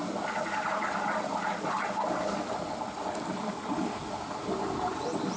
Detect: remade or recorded recorded